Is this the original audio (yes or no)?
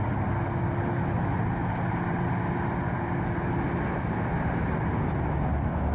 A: yes